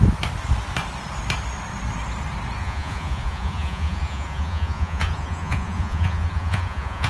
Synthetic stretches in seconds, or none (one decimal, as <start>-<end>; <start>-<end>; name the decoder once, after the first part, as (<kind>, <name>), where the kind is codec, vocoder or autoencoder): 2.6-7.1 (vocoder, Vocos)